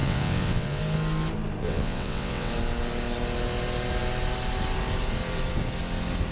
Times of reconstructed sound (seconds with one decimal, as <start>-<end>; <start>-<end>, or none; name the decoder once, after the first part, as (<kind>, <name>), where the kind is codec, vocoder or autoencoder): 0.0-0.8 (vocoder, WaveNeXt); 1.6-2.5